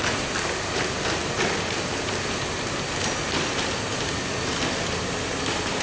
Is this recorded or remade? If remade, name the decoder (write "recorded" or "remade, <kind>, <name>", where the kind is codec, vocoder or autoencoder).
remade, vocoder, BigVGAN v2